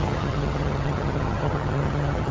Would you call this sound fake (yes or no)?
yes